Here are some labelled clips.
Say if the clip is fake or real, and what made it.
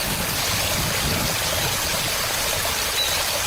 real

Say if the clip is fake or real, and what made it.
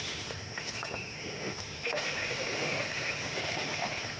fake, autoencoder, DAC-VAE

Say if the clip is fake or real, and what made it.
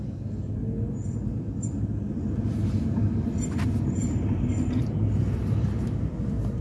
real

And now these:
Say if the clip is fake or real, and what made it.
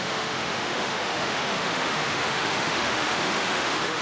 fake, autoencoder, DAC-VAE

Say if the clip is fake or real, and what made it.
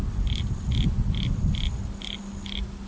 real